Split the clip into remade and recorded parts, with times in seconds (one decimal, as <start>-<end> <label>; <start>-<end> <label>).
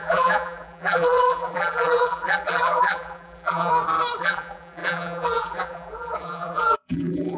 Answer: 0.0-3.7 remade; 3.7-4.2 recorded; 4.2-7.4 remade